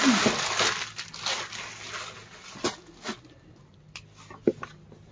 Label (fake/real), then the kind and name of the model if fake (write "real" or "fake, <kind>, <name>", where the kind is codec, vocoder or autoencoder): real